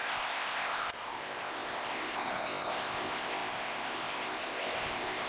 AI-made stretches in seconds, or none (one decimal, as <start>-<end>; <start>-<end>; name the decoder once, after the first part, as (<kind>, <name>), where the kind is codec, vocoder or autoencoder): 0.0-5.3 (codec, ZipCodec)